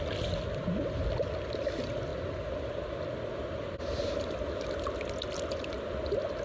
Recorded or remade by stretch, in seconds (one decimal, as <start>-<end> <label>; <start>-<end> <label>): 0.0-6.4 recorded